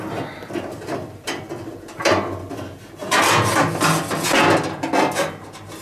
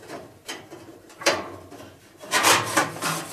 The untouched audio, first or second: first